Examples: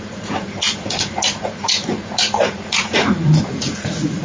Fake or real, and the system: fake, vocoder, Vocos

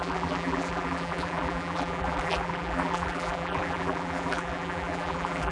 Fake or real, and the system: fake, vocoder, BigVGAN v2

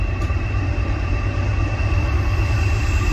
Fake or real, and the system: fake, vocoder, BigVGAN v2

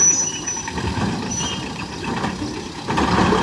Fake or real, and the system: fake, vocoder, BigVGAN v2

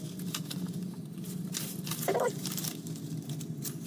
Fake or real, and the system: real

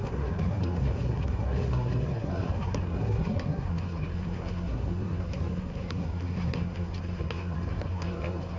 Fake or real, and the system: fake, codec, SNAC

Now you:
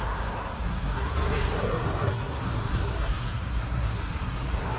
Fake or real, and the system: fake, codec, SNAC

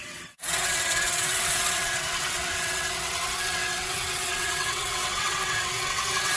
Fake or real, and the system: fake, vocoder, WaveNeXt